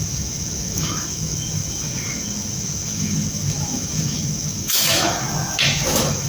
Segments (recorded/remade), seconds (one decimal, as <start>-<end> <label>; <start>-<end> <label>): 0.0-6.3 remade

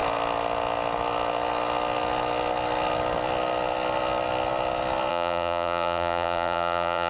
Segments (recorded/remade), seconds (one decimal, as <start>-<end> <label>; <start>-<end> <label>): 0.0-5.1 recorded; 5.1-7.1 remade

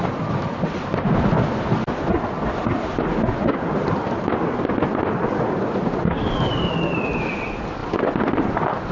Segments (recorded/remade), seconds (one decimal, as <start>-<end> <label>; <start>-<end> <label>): 0.0-8.9 recorded

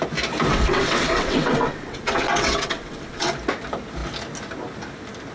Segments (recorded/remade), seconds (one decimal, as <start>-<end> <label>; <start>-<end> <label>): 0.0-0.5 recorded; 0.5-3.3 remade; 3.3-5.3 recorded

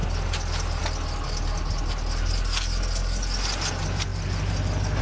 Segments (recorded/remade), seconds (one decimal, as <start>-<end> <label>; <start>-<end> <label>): 0.0-5.0 recorded